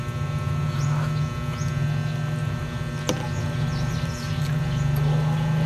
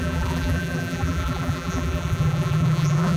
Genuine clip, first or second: first